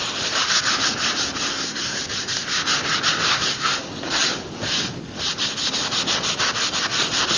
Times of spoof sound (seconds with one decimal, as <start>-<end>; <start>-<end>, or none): 1.5-2.0; 3.3-3.9